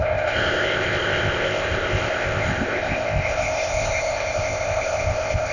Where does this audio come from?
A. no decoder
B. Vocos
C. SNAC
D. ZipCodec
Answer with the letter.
D